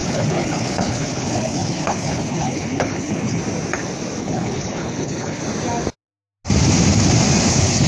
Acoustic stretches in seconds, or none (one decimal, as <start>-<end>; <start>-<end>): 3.4-4.2; 5.4-7.5